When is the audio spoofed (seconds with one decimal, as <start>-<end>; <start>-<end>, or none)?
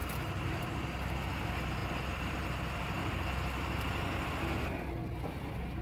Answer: 0.0-1.1